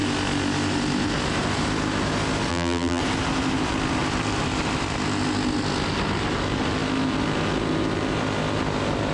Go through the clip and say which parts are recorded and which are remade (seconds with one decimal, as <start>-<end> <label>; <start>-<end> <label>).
0.0-2.5 recorded; 2.5-3.0 remade; 3.0-9.1 recorded

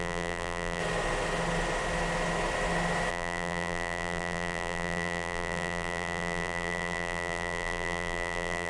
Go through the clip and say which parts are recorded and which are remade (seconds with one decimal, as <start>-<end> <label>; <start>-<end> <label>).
0.0-0.8 remade; 0.8-3.1 recorded; 3.1-8.7 remade

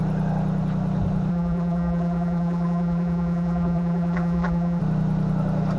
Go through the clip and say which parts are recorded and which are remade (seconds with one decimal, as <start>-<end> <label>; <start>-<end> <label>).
0.0-1.3 recorded; 1.3-4.8 remade; 4.8-5.8 recorded

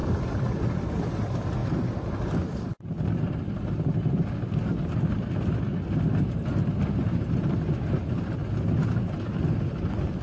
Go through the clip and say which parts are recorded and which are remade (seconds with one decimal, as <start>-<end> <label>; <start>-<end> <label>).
0.0-10.2 recorded

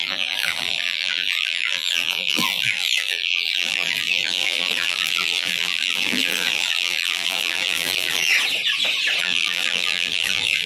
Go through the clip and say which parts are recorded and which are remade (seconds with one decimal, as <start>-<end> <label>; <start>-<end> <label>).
0.0-8.3 remade; 8.3-9.2 recorded; 9.2-10.7 remade